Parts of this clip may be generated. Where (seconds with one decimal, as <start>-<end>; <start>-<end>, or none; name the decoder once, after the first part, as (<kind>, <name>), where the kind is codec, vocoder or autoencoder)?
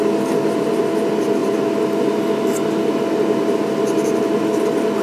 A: none